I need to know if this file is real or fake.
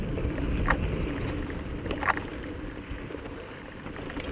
fake